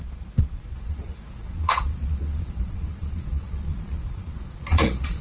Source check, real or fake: fake